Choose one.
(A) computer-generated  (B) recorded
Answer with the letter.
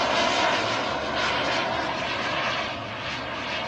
B